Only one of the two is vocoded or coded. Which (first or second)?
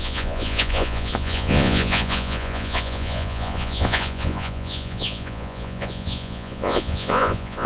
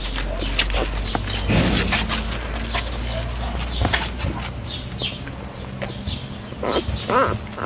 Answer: first